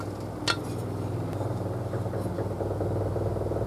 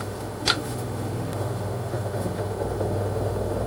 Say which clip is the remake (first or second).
second